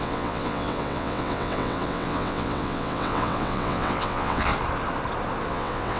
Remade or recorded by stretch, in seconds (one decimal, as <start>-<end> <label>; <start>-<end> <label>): 0.0-4.5 remade; 4.5-5.5 recorded; 5.5-6.0 remade